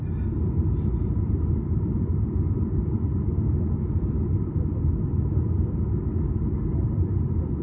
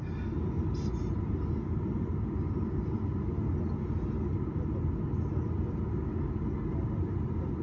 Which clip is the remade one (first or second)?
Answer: first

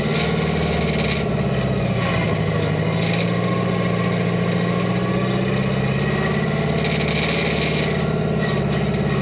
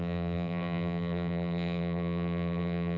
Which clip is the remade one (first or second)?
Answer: second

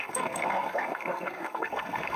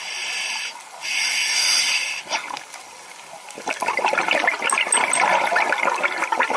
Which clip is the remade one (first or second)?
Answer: first